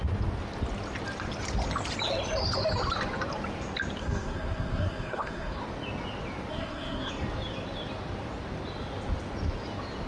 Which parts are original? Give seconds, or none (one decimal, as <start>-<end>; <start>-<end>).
0.0-4.0; 5.6-6.5; 7.1-10.1